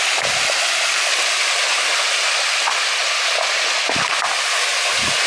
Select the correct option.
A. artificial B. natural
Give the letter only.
B